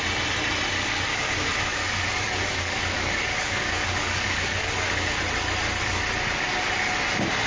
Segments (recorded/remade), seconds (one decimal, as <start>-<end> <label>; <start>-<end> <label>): 0.0-0.7 recorded; 0.7-5.2 remade; 5.2-7.5 recorded